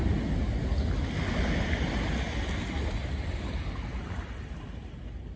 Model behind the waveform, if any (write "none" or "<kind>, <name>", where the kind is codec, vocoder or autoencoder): none